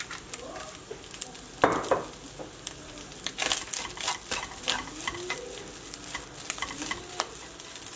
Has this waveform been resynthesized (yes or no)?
no